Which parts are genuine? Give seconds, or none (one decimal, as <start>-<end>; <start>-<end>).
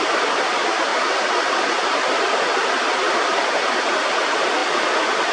none